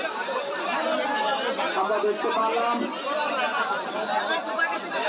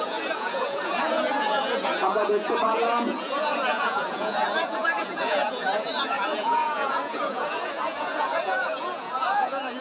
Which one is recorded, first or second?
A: first